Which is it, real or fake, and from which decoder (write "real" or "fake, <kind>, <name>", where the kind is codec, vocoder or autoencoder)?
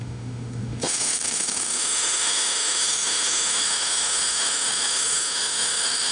fake, autoencoder, DAC-VAE